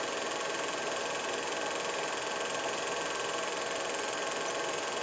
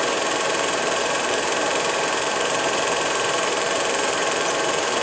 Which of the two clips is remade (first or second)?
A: second